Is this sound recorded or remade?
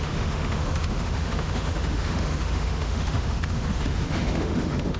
remade